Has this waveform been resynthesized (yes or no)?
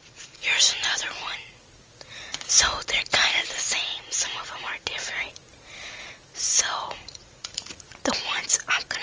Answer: yes